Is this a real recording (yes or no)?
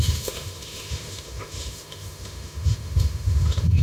no